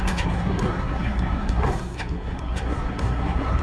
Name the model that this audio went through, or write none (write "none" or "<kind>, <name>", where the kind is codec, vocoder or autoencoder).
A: codec, SNAC